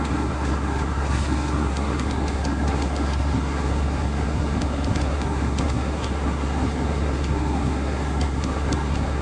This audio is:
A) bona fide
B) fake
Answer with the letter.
B